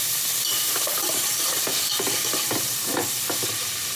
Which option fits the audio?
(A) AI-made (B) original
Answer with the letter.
A